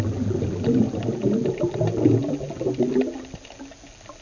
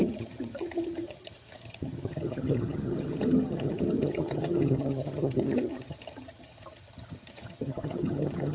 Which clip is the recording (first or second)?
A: first